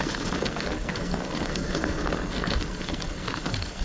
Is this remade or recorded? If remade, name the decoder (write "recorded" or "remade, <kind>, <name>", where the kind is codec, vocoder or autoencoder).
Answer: remade, codec, SNAC